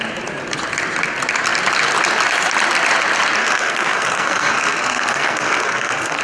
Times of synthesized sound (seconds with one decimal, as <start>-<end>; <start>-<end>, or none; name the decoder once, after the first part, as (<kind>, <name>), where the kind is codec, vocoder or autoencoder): 3.4-6.2 (codec, SNAC)